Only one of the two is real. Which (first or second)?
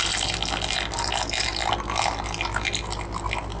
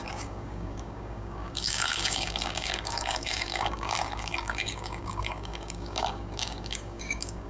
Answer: first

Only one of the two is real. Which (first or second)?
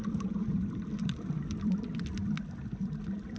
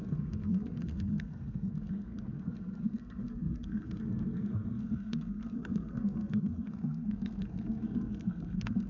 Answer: first